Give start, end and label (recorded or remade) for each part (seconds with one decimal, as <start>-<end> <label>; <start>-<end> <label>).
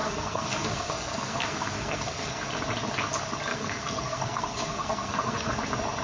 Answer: 0.0-2.5 remade; 2.5-3.5 recorded; 3.5-5.5 remade; 5.5-6.0 recorded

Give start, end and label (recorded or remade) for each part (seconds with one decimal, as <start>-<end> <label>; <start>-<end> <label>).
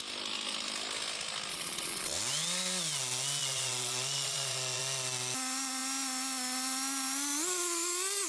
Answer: 0.0-1.5 recorded; 1.5-2.1 remade; 2.1-3.4 recorded; 3.4-4.8 remade; 4.8-8.3 recorded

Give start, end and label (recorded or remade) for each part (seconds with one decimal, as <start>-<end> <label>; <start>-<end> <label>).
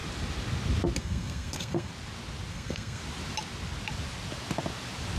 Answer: 0.0-1.0 recorded; 1.0-1.9 remade; 1.9-2.5 recorded; 2.5-3.0 remade; 3.0-5.2 recorded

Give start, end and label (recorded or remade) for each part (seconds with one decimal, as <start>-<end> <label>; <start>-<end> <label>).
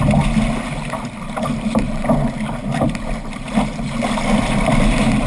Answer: 0.0-5.3 recorded